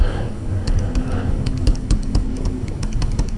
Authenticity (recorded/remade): remade